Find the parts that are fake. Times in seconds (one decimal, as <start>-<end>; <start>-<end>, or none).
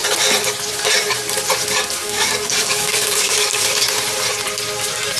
2.0-3.8